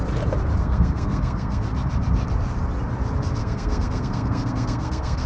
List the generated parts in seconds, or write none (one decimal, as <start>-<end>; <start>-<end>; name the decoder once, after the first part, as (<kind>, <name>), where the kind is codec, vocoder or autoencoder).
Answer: 0.6-1.6 (codec, SNAC); 3.4-5.3